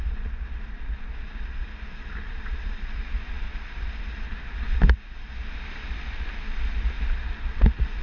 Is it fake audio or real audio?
real